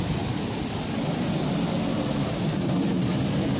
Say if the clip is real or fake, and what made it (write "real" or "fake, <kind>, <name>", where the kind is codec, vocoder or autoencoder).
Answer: real